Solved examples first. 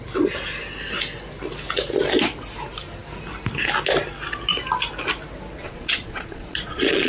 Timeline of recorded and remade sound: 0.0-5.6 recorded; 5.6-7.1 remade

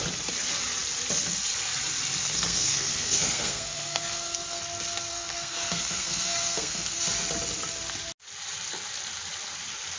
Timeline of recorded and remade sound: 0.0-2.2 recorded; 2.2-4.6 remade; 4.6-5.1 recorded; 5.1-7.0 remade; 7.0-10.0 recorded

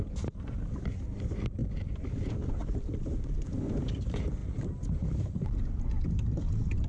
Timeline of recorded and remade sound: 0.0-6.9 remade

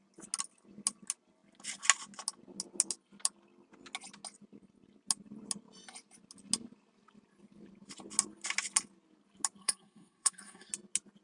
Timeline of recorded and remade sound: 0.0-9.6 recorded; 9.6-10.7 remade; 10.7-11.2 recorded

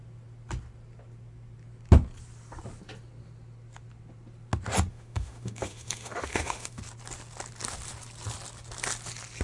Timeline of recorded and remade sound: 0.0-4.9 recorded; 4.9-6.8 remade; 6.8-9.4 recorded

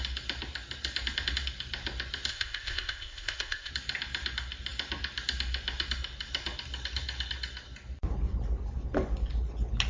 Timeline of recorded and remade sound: 0.0-2.3 recorded; 2.3-3.7 remade; 3.7-9.9 recorded

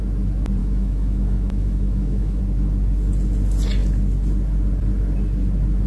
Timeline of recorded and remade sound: 0.0-0.6 recorded; 0.6-2.4 remade; 2.4-5.9 recorded

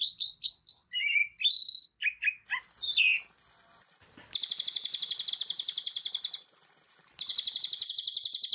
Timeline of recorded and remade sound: 0.0-7.3 recorded; 7.3-7.9 remade; 7.9-8.5 recorded